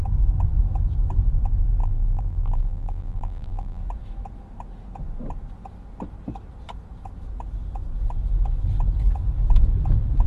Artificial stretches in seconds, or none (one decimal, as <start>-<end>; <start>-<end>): 1.8-3.8